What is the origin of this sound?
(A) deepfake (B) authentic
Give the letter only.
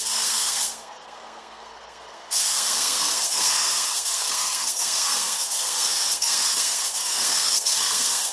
A